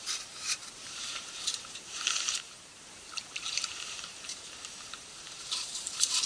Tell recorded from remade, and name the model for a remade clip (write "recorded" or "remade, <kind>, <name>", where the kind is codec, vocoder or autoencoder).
remade, vocoder, BigVGAN v2